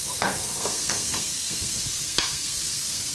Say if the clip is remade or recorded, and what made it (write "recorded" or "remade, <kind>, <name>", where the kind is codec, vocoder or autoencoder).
remade, codec, SNAC